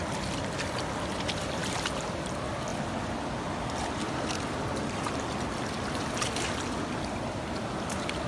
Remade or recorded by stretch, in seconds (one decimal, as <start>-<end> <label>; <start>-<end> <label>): 0.0-8.3 recorded